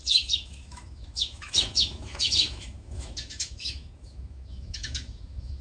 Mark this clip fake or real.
fake